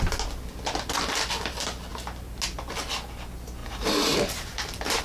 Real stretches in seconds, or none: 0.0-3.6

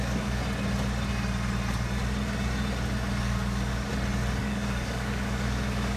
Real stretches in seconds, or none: 0.4-3.2; 3.9-4.4

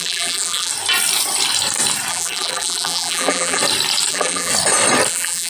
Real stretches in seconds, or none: 0.7-2.1; 3.6-4.1; 4.5-5.1

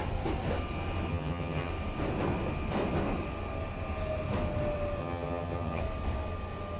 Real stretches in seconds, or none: 0.0-1.1; 1.7-5.0; 5.8-6.8

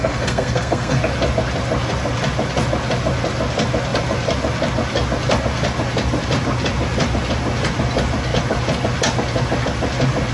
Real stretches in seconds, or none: 1.0-10.3

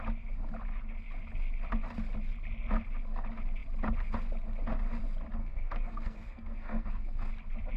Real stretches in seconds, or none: 0.0-5.4; 7.3-7.8

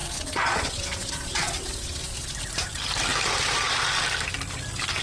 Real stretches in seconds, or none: 2.3-5.0